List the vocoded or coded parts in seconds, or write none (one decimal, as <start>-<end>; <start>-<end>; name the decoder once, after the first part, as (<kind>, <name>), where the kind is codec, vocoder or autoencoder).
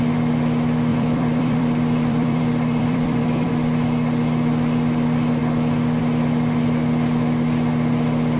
0.9-3.5 (vocoder, BigVGAN v2)